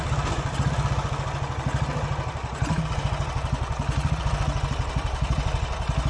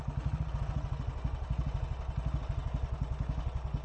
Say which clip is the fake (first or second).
first